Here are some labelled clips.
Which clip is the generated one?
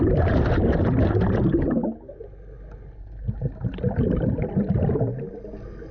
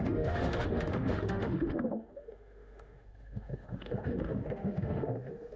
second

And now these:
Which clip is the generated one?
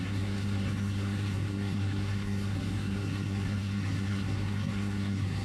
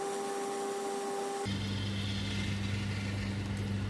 first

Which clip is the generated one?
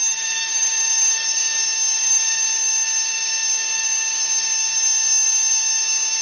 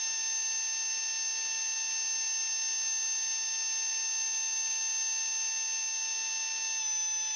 first